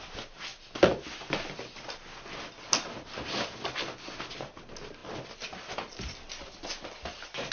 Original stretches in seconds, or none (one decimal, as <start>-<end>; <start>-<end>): 0.0-7.5